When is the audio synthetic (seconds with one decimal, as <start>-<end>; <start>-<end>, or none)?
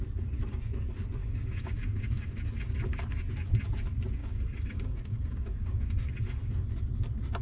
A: 1.2-2.4; 4.2-6.1